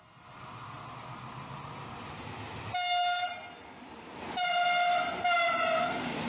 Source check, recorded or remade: recorded